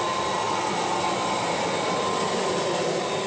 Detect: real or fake real